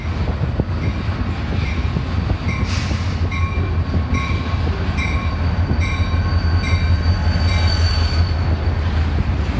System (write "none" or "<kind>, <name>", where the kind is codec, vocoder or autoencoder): none